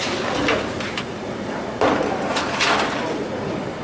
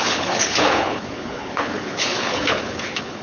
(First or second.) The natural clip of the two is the first